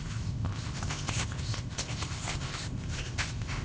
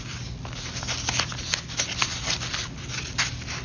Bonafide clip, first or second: second